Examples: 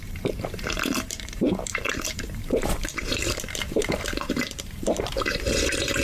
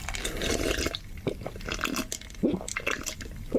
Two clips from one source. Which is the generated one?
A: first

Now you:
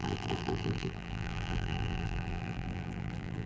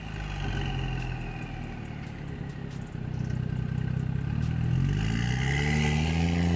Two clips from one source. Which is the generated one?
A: first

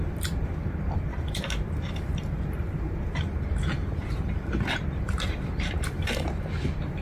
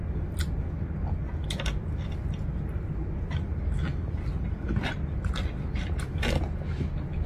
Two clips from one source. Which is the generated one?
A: first